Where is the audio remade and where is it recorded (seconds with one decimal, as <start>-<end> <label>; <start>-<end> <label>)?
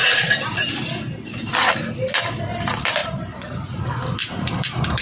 0.0-0.7 remade; 0.7-3.0 recorded; 3.0-3.8 remade; 3.8-4.2 recorded; 4.2-5.0 remade